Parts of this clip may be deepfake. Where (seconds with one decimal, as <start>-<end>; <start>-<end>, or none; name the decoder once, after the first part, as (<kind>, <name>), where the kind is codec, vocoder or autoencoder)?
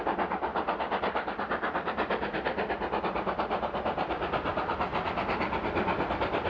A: none